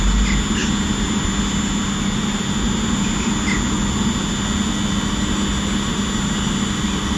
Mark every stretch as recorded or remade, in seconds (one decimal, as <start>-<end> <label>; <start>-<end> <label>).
0.0-7.2 recorded